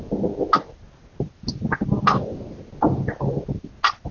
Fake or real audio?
real